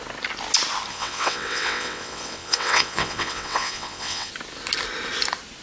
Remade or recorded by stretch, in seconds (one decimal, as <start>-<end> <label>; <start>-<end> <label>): 0.0-0.9 recorded; 0.9-4.3 remade; 4.3-5.6 recorded